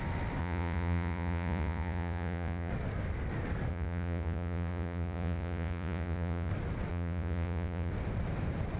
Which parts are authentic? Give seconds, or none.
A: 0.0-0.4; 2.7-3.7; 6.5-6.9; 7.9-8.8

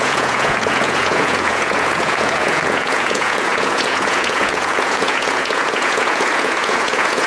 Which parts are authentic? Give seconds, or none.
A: none

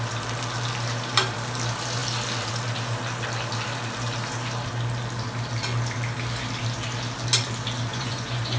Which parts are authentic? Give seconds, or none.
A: 0.0-7.9

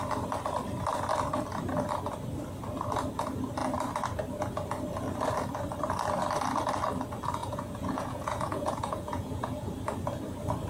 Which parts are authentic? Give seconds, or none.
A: 0.0-7.4; 9.7-10.7

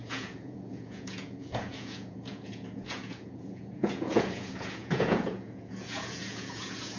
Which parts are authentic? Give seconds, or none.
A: none

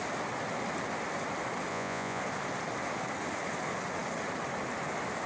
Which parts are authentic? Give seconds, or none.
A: 0.0-1.7; 2.2-5.3

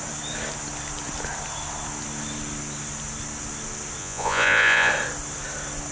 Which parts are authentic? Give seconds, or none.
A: 0.0-4.0; 4.9-5.9

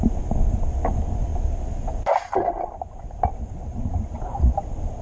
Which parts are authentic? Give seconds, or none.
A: 0.0-5.0